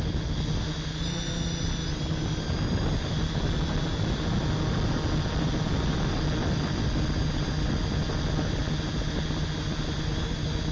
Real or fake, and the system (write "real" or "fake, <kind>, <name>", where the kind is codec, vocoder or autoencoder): real